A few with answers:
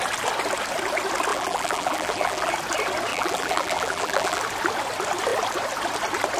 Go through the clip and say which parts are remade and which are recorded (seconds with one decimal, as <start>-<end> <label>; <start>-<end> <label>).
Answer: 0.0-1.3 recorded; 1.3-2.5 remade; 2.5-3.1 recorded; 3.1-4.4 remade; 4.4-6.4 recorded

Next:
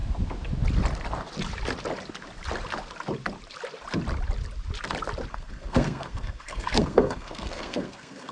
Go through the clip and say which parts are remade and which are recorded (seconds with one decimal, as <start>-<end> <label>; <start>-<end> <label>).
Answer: 0.0-5.3 recorded; 5.3-8.3 remade

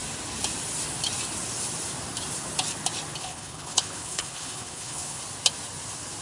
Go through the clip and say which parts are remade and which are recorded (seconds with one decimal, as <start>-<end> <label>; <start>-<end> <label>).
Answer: 0.0-3.2 recorded; 3.2-5.2 remade; 5.2-6.2 recorded

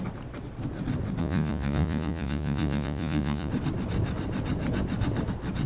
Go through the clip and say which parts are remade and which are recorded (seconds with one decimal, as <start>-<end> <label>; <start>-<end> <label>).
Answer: 0.0-1.2 recorded; 1.2-3.5 remade; 3.5-5.7 recorded

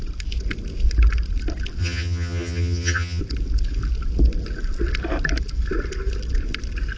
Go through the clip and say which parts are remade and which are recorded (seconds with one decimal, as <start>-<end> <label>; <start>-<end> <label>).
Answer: 0.0-1.8 recorded; 1.8-3.2 remade; 3.2-7.0 recorded